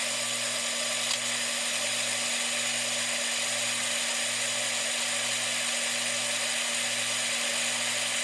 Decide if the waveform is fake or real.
real